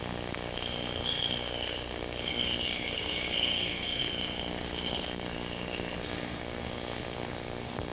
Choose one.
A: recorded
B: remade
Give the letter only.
B